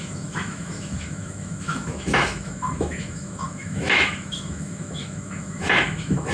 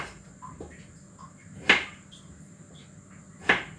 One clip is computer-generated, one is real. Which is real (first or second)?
second